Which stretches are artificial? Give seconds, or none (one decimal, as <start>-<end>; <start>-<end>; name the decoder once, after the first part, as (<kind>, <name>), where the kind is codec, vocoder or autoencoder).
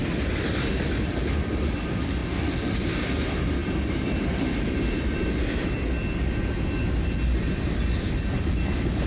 none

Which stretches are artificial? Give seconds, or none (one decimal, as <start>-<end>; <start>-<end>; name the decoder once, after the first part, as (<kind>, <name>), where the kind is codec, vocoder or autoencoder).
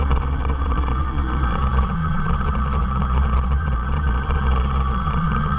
0.0-5.6 (vocoder, Vocos)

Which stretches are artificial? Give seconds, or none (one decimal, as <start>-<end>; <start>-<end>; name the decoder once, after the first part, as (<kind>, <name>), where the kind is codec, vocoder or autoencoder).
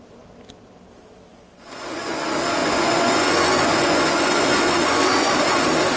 1.3-2.2 (vocoder, Vocos); 2.6-5.6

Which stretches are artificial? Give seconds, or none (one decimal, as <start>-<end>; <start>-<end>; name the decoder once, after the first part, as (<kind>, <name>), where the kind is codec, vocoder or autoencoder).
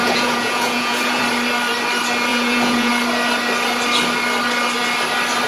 0.0-1.2 (vocoder, Vocos); 2.3-2.9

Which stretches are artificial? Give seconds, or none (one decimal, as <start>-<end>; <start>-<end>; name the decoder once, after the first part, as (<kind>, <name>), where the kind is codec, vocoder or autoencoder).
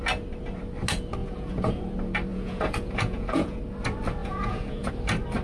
1.2-1.8 (vocoder, Vocos); 2.3-3.6; 4.2-4.9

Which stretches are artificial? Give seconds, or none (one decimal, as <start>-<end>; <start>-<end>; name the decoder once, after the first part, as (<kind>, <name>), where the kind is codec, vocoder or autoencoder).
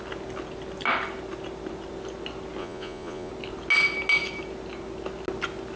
2.6-3.3 (vocoder, Vocos)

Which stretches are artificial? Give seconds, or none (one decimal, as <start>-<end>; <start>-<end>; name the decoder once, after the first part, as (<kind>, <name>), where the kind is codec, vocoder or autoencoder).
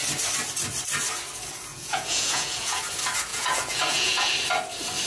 1.7-2.8 (vocoder, Vocos); 3.3-4.3